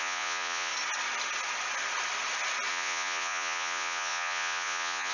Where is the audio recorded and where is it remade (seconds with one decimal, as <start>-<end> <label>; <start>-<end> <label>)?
0.0-0.7 remade; 0.7-2.7 recorded; 2.7-5.1 remade